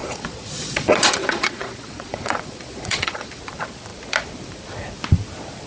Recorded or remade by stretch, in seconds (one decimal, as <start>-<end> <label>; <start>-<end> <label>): 0.0-3.4 remade; 3.4-5.7 recorded